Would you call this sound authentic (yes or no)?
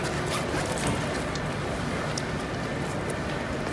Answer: yes